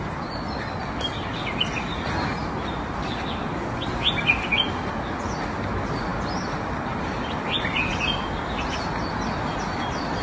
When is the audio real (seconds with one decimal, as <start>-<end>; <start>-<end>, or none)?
0.0-10.2